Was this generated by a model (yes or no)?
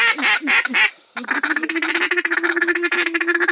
no